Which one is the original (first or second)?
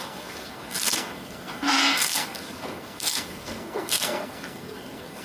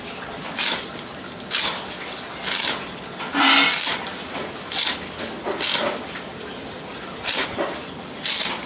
second